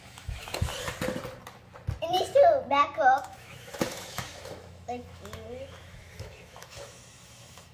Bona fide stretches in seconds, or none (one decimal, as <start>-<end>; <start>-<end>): 0.7-2.7